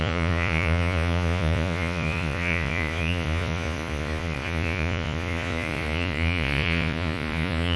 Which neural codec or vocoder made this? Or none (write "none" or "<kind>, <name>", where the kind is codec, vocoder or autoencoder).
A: vocoder, Vocos